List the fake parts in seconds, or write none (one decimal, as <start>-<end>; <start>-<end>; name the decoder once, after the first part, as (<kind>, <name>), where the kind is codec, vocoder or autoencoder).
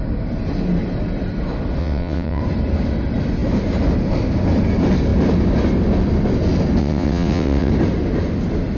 1.8-2.4 (vocoder, WaveNeXt); 6.8-7.7